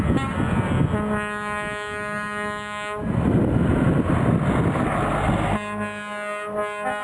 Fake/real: real